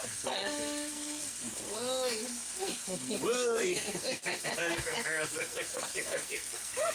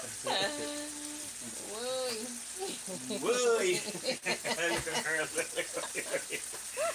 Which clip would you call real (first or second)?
second